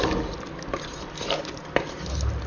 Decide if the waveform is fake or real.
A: real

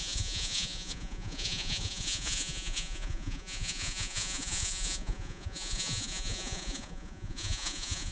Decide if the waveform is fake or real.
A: fake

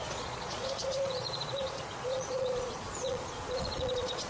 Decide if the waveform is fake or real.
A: fake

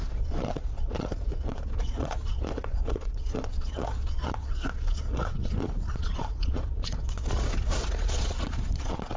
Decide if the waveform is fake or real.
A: fake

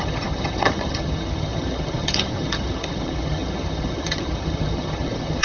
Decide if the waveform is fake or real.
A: fake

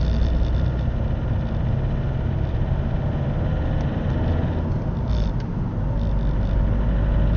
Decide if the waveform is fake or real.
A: real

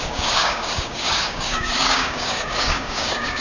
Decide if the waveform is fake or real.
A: fake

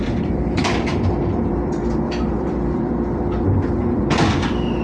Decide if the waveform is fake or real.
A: fake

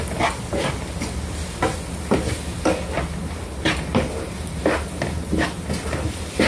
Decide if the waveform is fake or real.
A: real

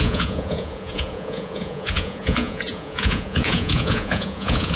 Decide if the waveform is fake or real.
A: fake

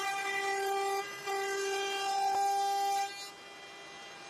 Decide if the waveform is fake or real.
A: real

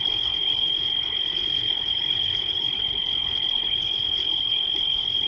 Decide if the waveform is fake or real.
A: fake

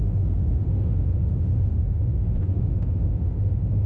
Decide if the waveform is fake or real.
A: fake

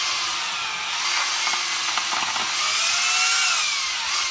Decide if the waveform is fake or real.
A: real